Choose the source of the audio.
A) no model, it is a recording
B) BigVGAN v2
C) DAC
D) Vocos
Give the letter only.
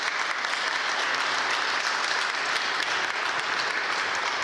A